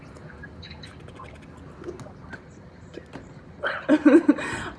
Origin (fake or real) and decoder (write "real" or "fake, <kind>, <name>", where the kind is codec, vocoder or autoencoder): real